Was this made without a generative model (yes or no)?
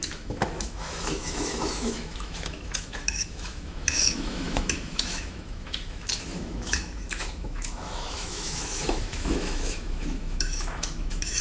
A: no